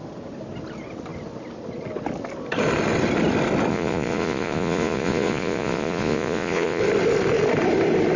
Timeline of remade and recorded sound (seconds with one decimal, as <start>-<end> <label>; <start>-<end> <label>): 0.0-3.7 recorded; 3.7-6.8 remade; 6.8-8.2 recorded